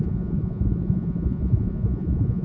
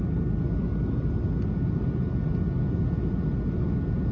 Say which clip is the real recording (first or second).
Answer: second